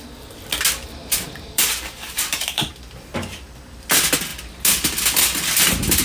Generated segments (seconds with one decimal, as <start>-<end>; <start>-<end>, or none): 1.0-2.7